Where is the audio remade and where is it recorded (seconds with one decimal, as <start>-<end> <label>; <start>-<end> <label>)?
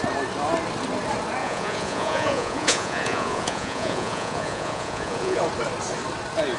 0.0-1.4 recorded; 1.4-5.4 remade; 5.4-6.6 recorded